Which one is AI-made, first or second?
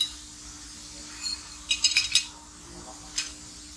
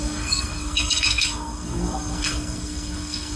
second